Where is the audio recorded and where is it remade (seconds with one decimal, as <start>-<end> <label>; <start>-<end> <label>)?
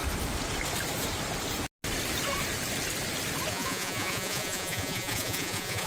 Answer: 0.0-3.5 recorded; 3.5-5.9 remade